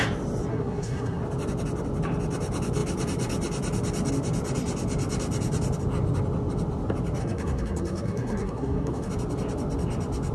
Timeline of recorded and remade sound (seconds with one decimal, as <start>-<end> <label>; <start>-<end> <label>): 0.0-0.5 recorded; 0.5-1.2 remade; 1.2-7.2 recorded; 7.2-9.1 remade; 9.1-10.3 recorded